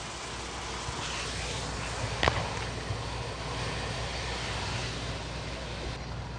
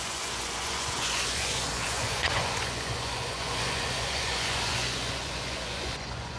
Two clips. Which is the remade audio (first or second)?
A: second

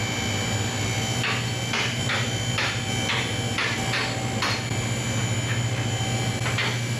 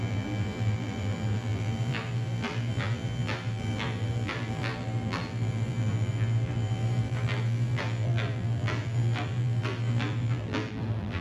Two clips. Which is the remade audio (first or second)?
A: second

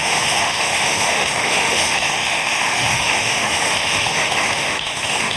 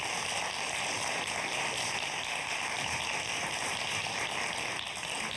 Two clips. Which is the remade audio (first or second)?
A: first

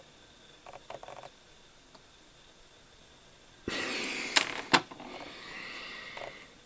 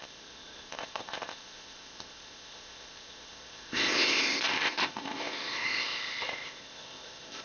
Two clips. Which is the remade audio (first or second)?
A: second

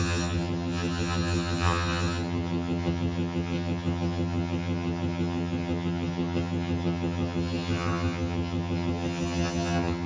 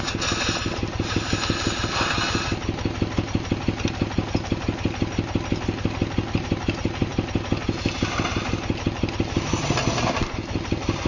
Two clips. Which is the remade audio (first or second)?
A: first